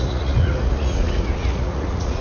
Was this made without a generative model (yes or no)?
no